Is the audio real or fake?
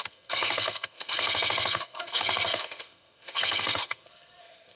fake